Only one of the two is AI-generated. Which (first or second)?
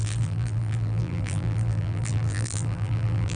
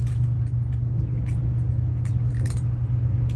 first